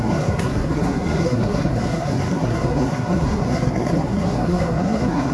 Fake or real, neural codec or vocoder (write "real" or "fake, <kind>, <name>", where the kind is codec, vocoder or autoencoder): fake, codec, SNAC